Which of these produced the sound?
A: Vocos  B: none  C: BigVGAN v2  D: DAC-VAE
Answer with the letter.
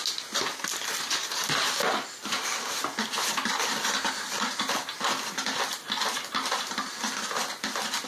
B